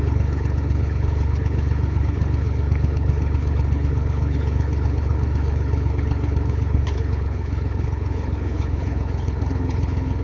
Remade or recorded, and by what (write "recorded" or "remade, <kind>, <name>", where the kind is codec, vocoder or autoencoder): remade, codec, HILCodec